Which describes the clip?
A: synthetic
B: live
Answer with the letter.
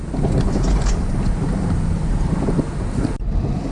A